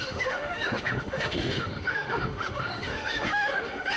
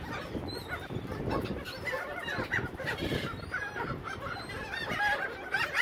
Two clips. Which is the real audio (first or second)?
second